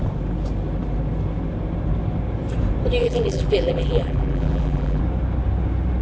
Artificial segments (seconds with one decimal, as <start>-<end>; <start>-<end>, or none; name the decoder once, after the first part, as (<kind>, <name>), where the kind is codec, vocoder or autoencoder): 3.0-5.0 (vocoder, BigVGAN v2)